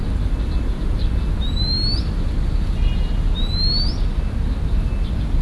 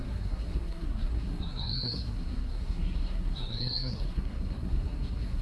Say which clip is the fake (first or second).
second